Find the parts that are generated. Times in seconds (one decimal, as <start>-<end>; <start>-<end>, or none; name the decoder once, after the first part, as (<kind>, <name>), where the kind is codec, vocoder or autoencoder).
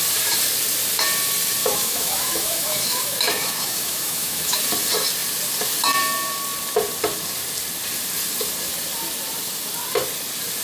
1.6-4.6 (autoencoder, DAC-VAE)